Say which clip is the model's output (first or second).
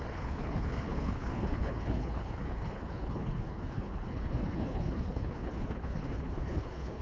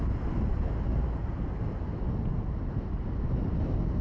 first